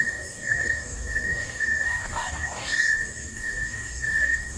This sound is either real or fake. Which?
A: fake